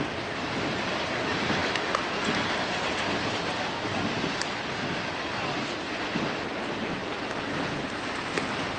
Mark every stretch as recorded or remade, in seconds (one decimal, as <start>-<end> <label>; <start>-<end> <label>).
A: 0.0-8.8 recorded